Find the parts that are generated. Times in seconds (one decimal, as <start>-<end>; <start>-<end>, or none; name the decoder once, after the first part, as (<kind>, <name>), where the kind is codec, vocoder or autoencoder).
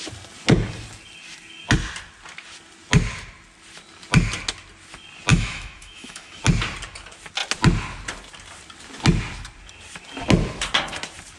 5.3-6.4 (autoencoder, DAC-VAE)